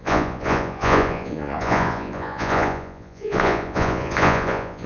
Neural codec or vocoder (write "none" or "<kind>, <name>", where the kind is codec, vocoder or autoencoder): vocoder, Vocos